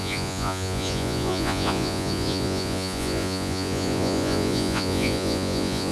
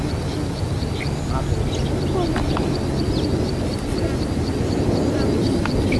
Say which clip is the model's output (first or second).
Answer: first